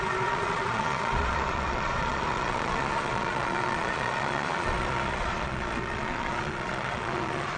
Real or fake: fake